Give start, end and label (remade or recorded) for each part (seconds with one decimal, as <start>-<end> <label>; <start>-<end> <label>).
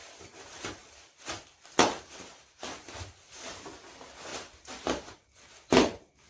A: 0.0-3.8 remade; 3.8-4.3 recorded; 4.3-5.5 remade; 5.5-6.3 recorded